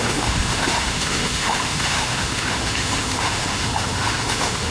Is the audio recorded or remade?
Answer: remade